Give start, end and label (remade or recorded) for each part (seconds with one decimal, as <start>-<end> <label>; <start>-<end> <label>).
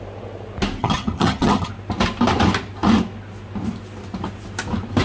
0.0-0.8 recorded; 0.8-1.7 remade; 1.7-5.0 recorded